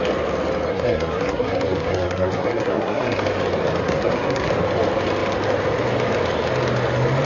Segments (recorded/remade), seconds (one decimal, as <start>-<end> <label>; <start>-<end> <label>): 0.0-0.7 recorded; 0.7-3.2 remade; 3.2-3.8 recorded; 3.8-4.5 remade; 4.5-7.2 recorded